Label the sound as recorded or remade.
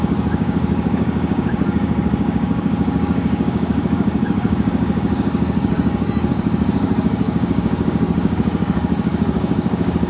remade